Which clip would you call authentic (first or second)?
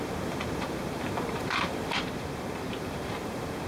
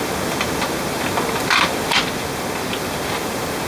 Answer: second